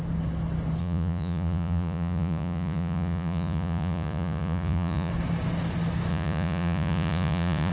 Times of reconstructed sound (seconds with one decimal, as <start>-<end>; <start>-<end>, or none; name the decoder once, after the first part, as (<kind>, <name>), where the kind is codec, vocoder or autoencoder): 0.8-5.1 (vocoder, Vocos); 6.1-7.7